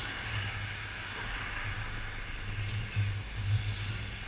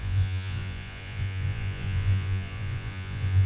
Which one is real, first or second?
first